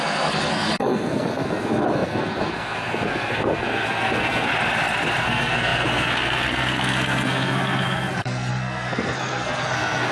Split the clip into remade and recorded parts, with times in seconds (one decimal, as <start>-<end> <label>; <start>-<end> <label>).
0.0-4.5 remade; 4.5-5.2 recorded; 5.2-10.1 remade